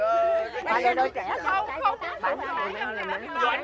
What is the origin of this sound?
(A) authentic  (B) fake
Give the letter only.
A